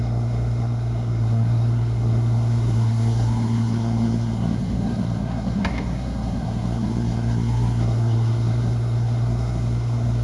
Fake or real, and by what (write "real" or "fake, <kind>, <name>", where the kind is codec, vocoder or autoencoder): fake, codec, SNAC